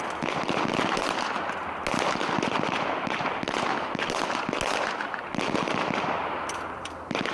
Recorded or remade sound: recorded